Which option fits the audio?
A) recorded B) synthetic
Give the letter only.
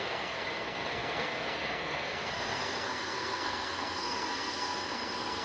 B